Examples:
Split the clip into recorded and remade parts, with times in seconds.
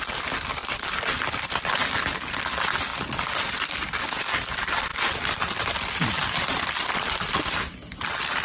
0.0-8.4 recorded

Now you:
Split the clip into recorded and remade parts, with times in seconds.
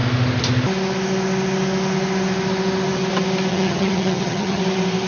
0.0-3.5 recorded; 3.5-4.6 remade; 4.6-5.1 recorded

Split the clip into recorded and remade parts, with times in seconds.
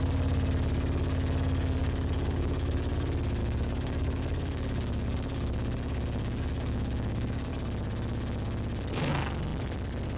0.0-1.8 recorded; 1.8-2.9 remade; 2.9-3.4 recorded; 3.4-7.5 remade; 7.5-10.2 recorded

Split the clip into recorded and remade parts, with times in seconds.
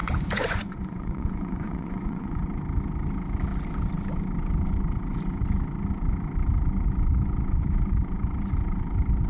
0.0-2.4 remade; 2.4-9.3 recorded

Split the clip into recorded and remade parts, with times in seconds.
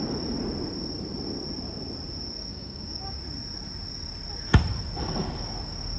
0.0-2.5 recorded; 2.5-3.2 remade; 3.2-6.0 recorded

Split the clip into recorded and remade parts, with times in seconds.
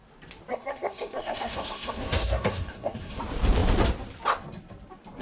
0.0-0.5 recorded; 0.5-3.2 remade; 3.2-5.2 recorded